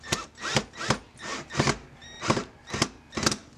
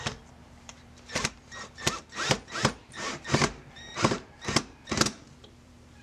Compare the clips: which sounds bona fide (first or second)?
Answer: first